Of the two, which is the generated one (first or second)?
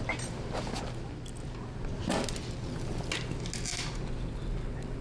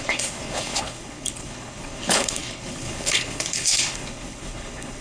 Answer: second